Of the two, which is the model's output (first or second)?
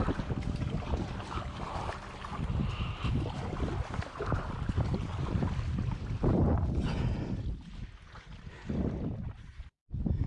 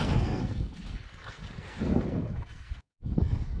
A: second